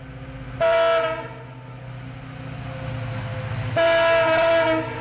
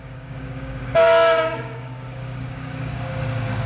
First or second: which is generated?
second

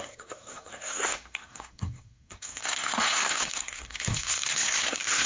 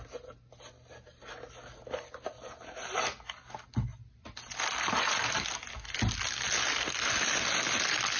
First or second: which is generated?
first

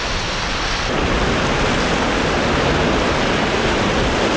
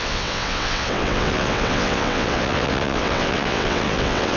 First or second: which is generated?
second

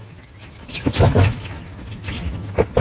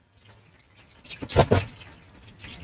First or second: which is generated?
first